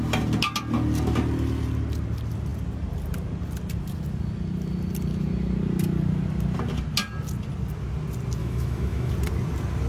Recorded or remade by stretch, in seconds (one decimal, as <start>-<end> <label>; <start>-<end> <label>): 0.0-8.4 recorded; 8.4-9.1 remade; 9.1-9.9 recorded

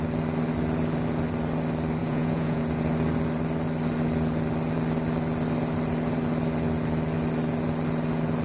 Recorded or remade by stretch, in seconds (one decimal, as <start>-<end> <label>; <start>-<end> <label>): 0.0-2.0 recorded; 2.0-2.6 remade; 2.6-8.4 recorded

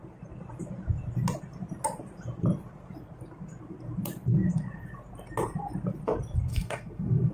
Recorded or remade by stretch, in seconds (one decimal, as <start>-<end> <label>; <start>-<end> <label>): 0.0-6.5 recorded; 6.5-7.3 remade